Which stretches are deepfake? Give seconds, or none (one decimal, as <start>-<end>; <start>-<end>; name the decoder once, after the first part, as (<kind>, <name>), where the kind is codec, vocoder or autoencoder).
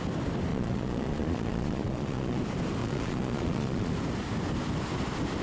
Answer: 0.5-2.4 (vocoder, Vocos); 2.8-3.9